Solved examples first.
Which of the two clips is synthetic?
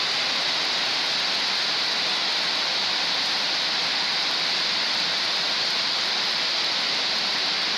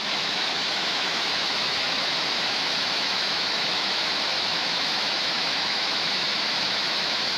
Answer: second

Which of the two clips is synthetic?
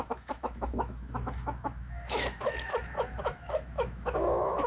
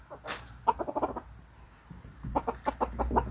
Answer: first